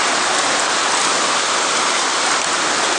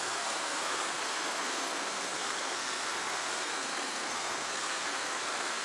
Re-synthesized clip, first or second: second